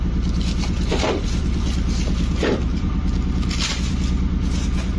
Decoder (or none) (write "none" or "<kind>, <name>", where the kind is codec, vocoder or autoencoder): vocoder, BigVGAN v2